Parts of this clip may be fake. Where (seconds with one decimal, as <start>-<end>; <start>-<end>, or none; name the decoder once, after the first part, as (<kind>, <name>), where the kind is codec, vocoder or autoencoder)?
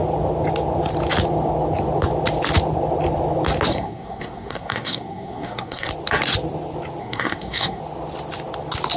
3.7-5.9 (codec, SNAC); 7.0-7.8